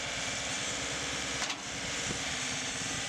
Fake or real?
fake